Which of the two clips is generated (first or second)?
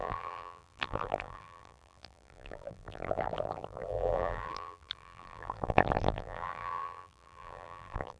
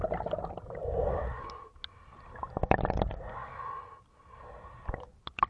first